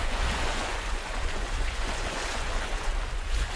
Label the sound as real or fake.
fake